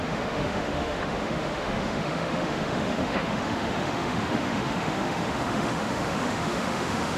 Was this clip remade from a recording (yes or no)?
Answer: yes